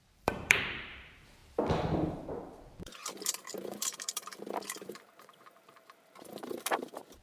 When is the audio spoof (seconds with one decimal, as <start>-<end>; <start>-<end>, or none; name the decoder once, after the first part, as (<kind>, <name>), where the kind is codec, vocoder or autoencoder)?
0.0-1.4 (vocoder, BigVGAN v2); 2.1-7.2